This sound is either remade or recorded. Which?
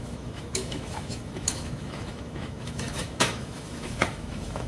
remade